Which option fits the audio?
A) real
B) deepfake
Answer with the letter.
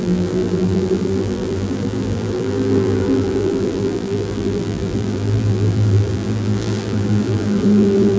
B